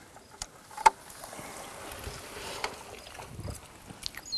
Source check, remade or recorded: recorded